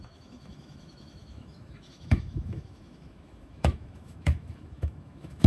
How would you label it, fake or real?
fake